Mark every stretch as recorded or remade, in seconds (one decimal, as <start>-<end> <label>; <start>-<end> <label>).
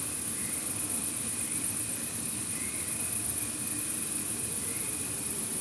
0.0-5.6 recorded